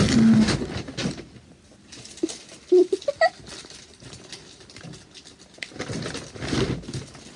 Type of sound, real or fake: real